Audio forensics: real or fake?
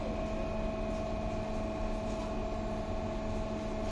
real